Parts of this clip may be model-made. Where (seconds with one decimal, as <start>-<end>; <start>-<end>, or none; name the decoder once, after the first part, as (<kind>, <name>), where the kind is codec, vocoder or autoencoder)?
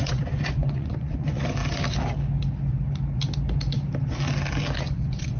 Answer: 0.0-1.6 (vocoder, Vocos); 4.8-5.4